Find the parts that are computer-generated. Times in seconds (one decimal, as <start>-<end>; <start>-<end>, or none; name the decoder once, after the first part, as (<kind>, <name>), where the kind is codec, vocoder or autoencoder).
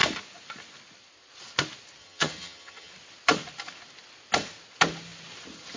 2.0-2.9 (vocoder, HiFi-GAN)